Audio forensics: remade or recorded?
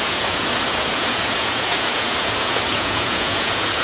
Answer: remade